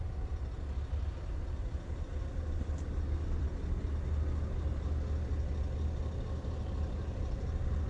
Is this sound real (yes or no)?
yes